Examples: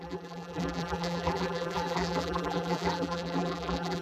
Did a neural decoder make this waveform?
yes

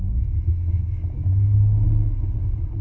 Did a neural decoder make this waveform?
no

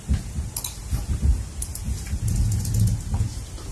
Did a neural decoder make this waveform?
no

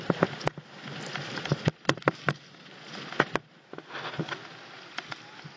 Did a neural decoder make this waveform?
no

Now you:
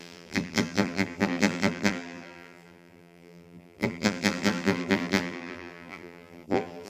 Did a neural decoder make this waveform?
yes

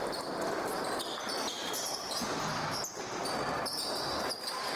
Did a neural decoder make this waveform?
no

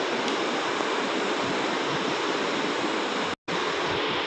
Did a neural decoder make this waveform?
no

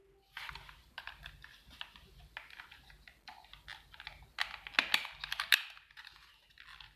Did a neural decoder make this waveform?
no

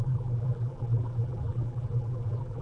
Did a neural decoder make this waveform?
yes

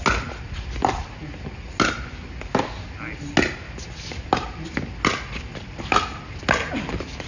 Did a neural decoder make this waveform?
no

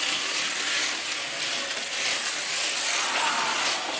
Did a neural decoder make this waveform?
no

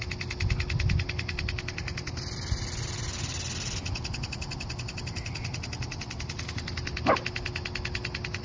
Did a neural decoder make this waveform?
no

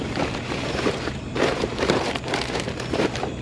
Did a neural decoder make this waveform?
yes